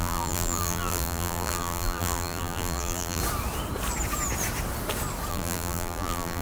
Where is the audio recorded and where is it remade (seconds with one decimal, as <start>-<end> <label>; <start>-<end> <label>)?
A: 0.0-3.2 remade; 3.2-5.3 recorded; 5.3-6.4 remade